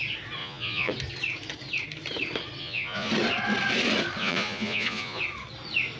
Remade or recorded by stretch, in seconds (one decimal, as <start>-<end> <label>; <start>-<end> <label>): 0.0-0.4 recorded; 0.4-0.9 remade; 0.9-2.6 recorded; 2.6-3.1 remade; 3.1-4.2 recorded; 4.2-5.2 remade; 5.2-6.0 recorded